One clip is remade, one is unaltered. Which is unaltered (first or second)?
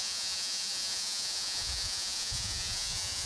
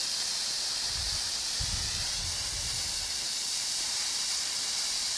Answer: second